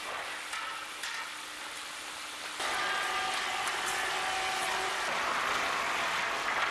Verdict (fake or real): real